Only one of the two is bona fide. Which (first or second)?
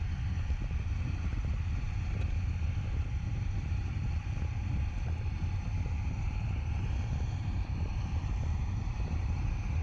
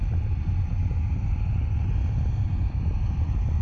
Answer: second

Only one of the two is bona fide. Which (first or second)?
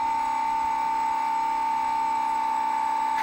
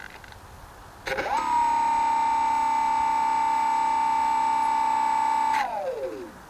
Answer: second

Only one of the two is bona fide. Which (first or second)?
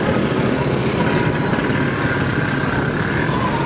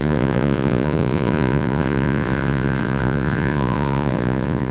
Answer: first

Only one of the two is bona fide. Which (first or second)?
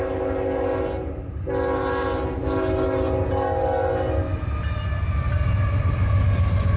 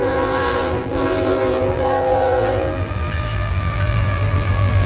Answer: first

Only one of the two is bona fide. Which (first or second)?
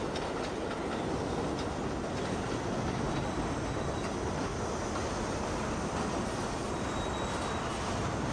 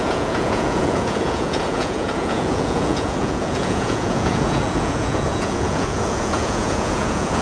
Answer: first